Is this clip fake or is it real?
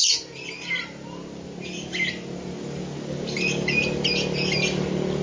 real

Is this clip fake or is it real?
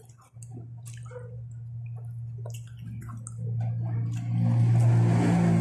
real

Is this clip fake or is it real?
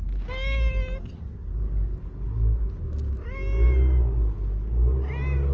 real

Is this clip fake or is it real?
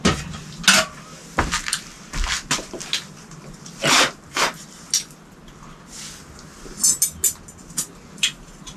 real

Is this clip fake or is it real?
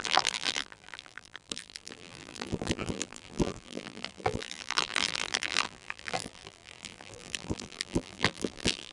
fake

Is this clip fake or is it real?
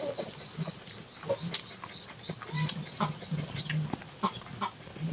real